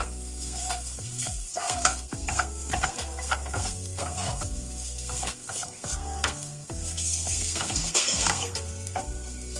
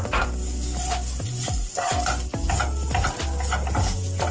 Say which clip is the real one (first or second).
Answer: second